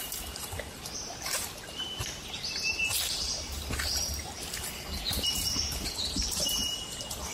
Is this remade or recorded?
remade